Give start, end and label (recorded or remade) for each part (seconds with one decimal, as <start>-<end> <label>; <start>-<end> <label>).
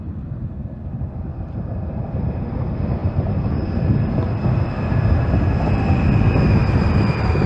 0.0-1.3 recorded; 1.3-2.5 remade; 2.5-3.0 recorded; 3.0-3.8 remade; 3.8-6.6 recorded; 6.6-7.5 remade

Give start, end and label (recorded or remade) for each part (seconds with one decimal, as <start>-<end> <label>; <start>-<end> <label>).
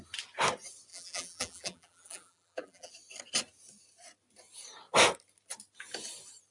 0.0-0.9 recorded; 0.9-2.9 remade; 2.9-6.5 recorded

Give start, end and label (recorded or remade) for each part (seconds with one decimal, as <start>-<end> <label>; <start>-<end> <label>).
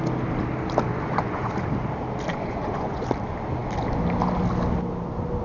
0.0-0.9 recorded; 0.9-1.5 remade; 1.5-2.3 recorded; 2.3-3.0 remade; 3.0-5.4 recorded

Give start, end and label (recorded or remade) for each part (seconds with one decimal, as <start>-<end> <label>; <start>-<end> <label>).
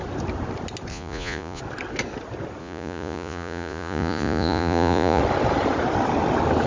0.0-0.9 recorded; 0.9-1.6 remade; 1.6-2.6 recorded; 2.6-5.2 remade; 5.2-6.7 recorded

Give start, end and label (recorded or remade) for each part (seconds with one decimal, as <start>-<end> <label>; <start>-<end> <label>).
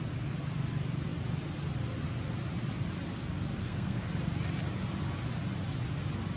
0.0-3.6 recorded; 3.6-4.1 remade; 4.1-6.4 recorded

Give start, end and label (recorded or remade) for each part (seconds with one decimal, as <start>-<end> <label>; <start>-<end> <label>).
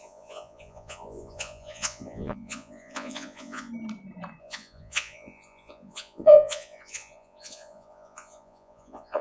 0.0-3.7 remade; 3.7-4.4 recorded; 4.4-9.2 remade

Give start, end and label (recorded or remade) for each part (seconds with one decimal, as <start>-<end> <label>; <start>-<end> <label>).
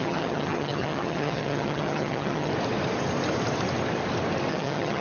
0.0-2.5 remade; 2.5-4.5 recorded; 4.5-5.0 remade